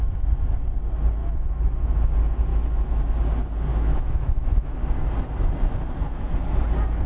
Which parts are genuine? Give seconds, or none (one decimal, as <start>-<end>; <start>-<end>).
0.0-1.2; 2.1-2.5; 3.0-3.7; 4.8-7.1